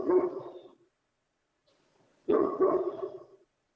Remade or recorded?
remade